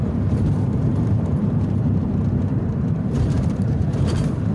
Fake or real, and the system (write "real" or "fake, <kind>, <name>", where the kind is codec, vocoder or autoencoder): fake, vocoder, BigVGAN v2